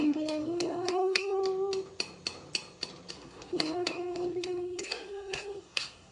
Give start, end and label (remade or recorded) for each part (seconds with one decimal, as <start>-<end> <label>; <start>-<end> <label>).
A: 0.0-1.4 remade; 1.4-3.1 recorded; 3.1-6.1 remade